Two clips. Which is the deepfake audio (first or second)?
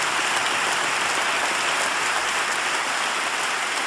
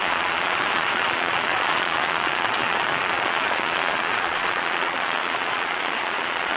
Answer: second